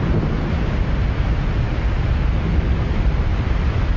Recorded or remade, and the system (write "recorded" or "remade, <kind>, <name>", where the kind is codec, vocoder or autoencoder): recorded